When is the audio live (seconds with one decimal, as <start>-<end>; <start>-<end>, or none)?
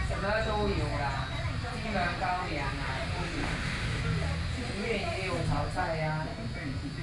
0.0-3.4; 4.0-7.0